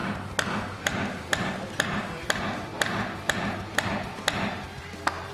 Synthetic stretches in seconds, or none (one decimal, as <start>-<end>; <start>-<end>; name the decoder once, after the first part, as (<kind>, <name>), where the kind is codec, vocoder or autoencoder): none